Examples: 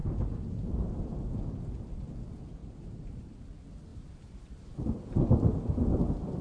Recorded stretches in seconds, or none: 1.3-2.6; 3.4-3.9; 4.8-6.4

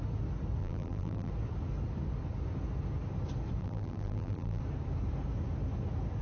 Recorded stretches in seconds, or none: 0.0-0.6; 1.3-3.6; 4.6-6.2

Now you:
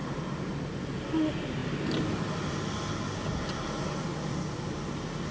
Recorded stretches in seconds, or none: 0.8-5.3